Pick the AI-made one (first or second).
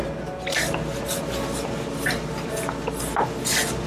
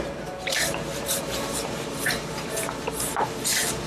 second